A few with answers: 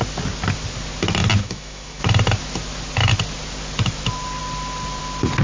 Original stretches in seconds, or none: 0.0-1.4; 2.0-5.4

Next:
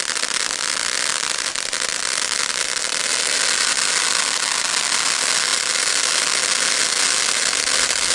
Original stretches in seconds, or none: 0.0-8.1

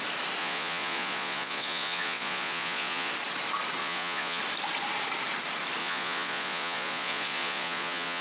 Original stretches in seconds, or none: 0.0-0.4; 3.1-3.8; 4.4-5.8

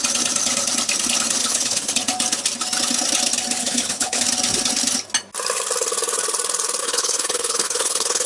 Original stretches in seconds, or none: 0.0-1.4; 1.9-3.6; 4.2-6.8

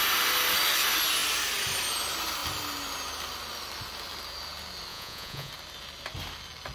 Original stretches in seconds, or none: 0.0-4.9; 5.5-6.7